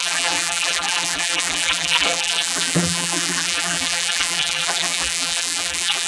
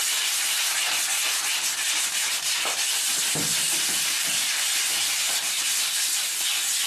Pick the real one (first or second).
second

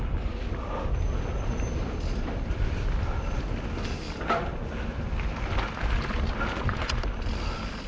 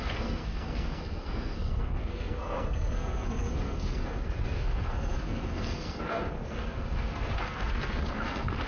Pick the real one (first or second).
first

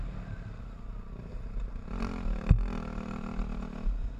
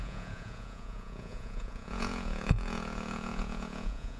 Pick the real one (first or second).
first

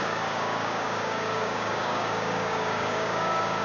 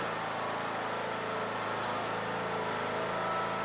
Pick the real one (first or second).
second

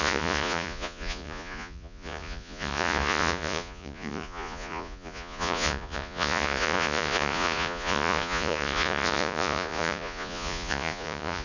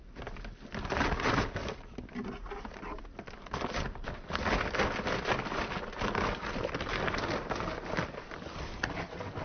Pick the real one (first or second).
second